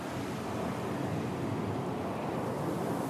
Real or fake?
real